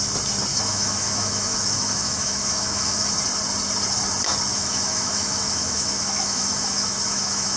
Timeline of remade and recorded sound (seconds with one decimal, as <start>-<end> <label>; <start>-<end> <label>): 0.0-0.5 recorded; 0.5-3.1 remade; 3.1-4.5 recorded; 4.5-7.6 remade